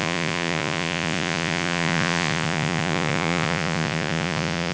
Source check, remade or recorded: remade